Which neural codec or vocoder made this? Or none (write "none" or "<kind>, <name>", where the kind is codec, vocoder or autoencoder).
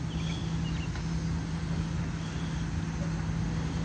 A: none